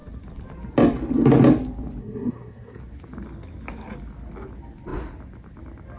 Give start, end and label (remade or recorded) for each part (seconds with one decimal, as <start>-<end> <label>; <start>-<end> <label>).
0.0-2.0 recorded; 2.0-2.8 remade; 2.8-6.0 recorded